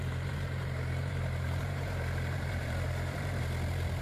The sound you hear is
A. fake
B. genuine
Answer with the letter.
A